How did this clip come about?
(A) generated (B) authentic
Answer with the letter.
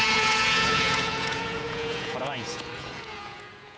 A